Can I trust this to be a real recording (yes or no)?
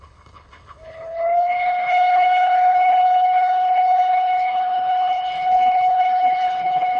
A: no